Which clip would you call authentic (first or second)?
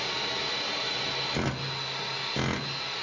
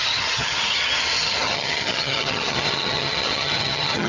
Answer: first